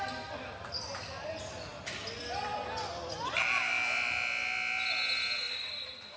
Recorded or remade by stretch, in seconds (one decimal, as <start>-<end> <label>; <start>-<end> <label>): 0.0-6.2 recorded